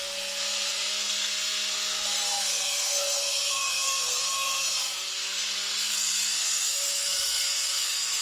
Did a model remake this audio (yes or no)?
yes